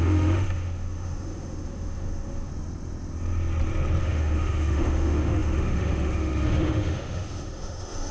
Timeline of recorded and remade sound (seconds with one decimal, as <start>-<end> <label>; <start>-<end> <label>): 0.0-2.5 remade; 2.5-4.0 recorded; 4.0-8.1 remade